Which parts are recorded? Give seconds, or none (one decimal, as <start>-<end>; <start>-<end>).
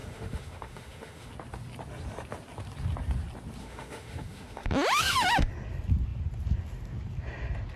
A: 1.3-3.6; 5.5-7.8